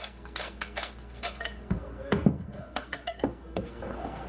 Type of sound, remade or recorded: remade